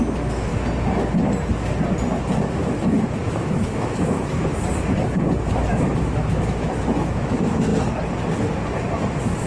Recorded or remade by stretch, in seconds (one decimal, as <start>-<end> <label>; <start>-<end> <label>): 0.0-0.5 remade; 0.5-2.6 recorded; 2.6-4.5 remade; 4.5-5.7 recorded; 5.7-7.7 remade; 7.7-9.1 recorded; 9.1-9.5 remade